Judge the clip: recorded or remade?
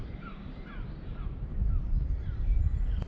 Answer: remade